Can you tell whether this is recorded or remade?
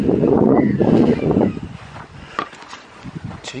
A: remade